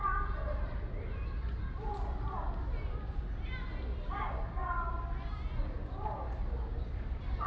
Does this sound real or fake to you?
real